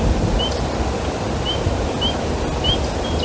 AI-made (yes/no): no